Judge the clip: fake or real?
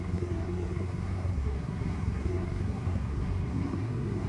fake